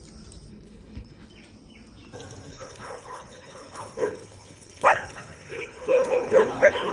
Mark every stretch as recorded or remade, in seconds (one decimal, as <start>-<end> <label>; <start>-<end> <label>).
0.0-0.5 recorded; 0.5-1.3 remade; 1.3-2.5 recorded; 2.5-6.9 remade